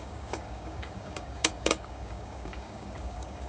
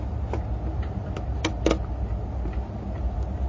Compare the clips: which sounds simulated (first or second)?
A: first